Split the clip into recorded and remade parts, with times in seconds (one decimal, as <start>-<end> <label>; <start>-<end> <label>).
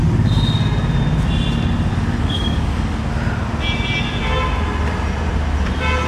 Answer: 0.0-1.9 recorded; 1.9-3.0 remade; 3.0-6.1 recorded